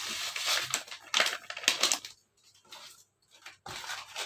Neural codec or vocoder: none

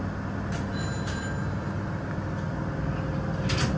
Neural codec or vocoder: none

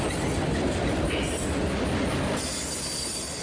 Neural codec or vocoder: none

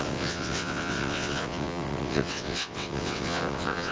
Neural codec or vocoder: vocoder, WaveNeXt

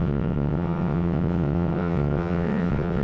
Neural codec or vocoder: vocoder, WaveNeXt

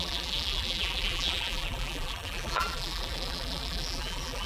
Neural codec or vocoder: vocoder, BigVGAN v2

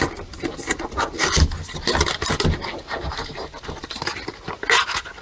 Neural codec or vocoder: none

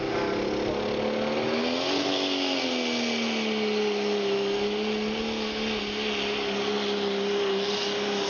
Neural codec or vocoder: none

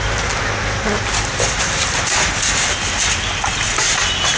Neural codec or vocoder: none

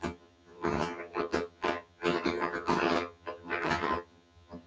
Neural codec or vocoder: vocoder, HiFi-GAN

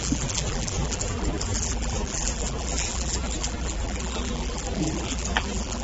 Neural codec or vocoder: vocoder, BigVGAN v2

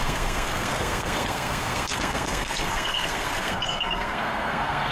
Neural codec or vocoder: codec, SNAC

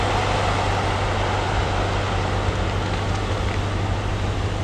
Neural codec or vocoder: none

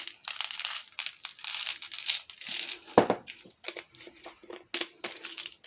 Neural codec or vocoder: none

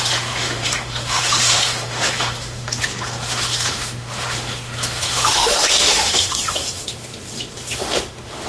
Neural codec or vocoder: autoencoder, DAC-VAE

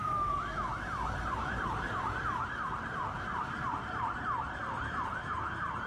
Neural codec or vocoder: vocoder, BigVGAN v2